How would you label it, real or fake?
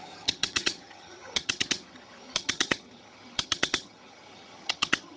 fake